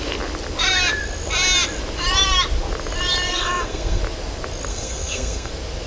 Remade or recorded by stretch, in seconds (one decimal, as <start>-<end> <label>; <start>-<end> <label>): 0.0-3.3 recorded; 3.3-4.0 remade; 4.0-4.7 recorded; 4.7-5.5 remade; 5.5-5.9 recorded